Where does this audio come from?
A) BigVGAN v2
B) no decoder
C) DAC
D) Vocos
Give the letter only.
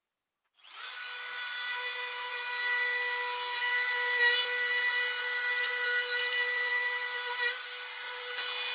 B